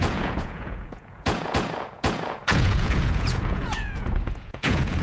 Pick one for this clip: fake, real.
fake